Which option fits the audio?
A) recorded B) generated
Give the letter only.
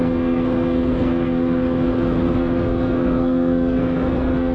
B